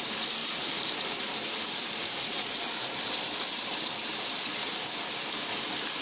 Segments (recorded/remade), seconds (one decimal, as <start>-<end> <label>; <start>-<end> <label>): 0.0-4.6 remade; 4.6-5.4 recorded; 5.4-6.0 remade